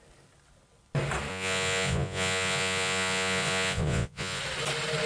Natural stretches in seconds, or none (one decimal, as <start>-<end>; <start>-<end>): 0.0-1.3; 4.4-5.1